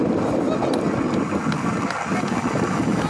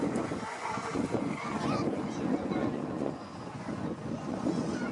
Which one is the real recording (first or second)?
first